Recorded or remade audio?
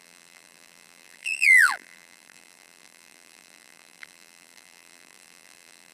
remade